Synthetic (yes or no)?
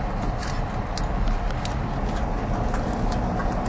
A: no